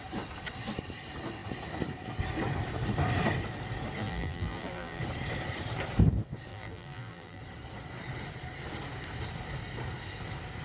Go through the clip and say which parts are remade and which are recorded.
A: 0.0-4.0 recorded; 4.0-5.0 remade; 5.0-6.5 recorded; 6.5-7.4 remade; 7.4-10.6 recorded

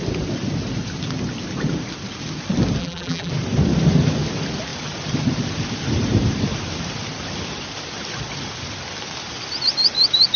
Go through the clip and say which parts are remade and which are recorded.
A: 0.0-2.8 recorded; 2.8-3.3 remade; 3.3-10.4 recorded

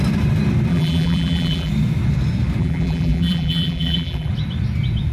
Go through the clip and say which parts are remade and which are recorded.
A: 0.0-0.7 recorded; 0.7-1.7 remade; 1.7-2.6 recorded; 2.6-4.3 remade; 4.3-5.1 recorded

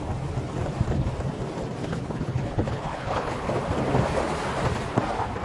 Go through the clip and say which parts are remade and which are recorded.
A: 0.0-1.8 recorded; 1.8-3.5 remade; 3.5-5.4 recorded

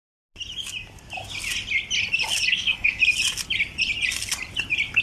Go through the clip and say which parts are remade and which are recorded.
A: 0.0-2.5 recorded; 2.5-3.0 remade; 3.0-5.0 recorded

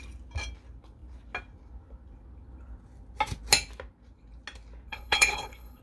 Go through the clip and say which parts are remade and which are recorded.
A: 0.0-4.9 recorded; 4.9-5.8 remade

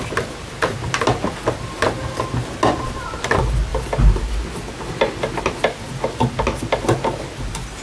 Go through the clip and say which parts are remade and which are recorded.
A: 0.0-7.8 recorded

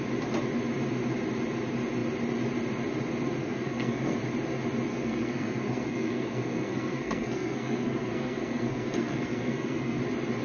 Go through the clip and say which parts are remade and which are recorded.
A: 0.0-3.4 recorded; 3.4-4.2 remade; 4.2-4.9 recorded; 4.9-10.0 remade; 10.0-10.4 recorded